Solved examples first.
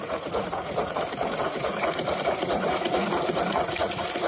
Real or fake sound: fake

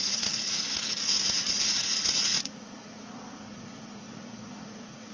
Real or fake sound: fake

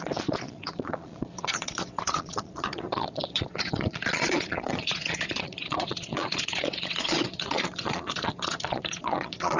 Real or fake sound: fake